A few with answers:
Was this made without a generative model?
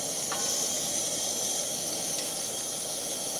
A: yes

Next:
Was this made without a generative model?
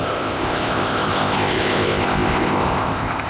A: no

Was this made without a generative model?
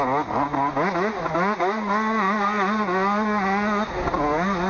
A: yes